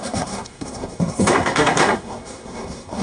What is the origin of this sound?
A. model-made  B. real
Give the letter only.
A